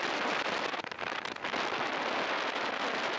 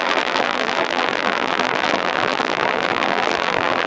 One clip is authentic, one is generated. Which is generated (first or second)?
second